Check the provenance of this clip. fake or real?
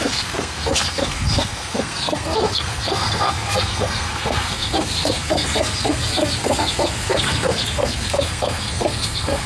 fake